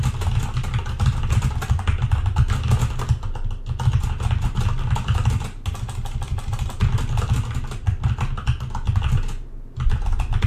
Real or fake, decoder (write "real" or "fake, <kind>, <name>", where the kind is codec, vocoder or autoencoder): real